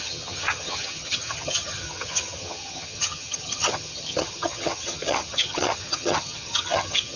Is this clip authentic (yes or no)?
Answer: no